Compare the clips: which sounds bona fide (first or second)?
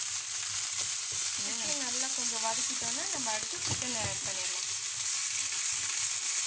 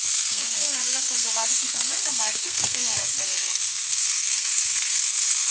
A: first